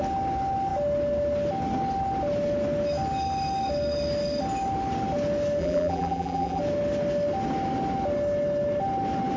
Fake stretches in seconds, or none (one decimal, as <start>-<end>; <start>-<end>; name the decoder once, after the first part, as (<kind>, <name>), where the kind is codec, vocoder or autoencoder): 5.6-6.6 (vocoder, BigVGAN v2)